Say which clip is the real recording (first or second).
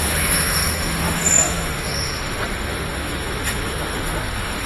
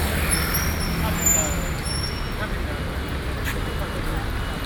second